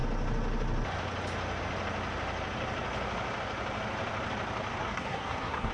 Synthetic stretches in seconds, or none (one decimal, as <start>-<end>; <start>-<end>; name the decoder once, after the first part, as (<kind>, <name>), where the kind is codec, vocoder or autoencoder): 4.8-5.7 (codec, SNAC)